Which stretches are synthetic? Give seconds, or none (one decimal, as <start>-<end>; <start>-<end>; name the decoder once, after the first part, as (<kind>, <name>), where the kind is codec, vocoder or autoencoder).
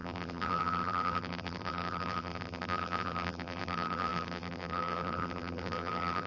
0.0-6.3 (vocoder, BigVGAN v2)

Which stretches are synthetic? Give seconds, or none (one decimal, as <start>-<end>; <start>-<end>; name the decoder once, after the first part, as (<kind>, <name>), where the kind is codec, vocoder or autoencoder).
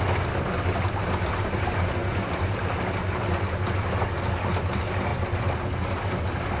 none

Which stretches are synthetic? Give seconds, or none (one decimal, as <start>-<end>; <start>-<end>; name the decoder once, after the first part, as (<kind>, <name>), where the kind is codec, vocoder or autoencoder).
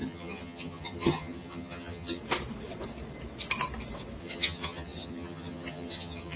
0.0-2.2 (vocoder, HiFi-GAN); 4.2-6.4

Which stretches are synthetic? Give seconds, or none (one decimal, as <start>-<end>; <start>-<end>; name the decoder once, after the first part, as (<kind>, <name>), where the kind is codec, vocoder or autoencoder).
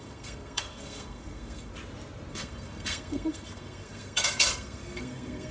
0.0-1.7 (codec, SNAC); 2.3-5.5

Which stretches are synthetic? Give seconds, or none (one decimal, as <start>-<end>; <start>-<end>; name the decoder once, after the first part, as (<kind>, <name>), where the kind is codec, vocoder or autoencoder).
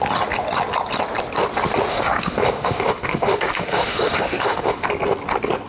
1.9-4.9 (autoencoder, DAC-VAE)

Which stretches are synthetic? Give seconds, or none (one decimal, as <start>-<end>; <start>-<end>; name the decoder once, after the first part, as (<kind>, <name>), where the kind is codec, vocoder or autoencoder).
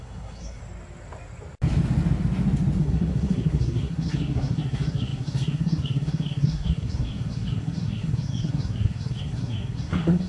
0.0-0.6 (codec, SNAC); 2.8-10.3